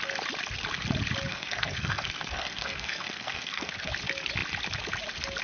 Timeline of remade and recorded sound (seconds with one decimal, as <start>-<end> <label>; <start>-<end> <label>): 0.0-1.3 recorded; 1.3-3.9 remade; 3.9-5.4 recorded